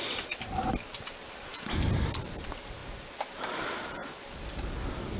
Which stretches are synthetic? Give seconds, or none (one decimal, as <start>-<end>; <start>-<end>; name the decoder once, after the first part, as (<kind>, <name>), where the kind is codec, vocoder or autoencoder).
none